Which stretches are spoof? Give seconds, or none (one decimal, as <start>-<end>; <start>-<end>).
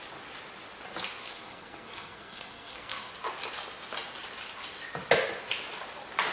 1.2-3.1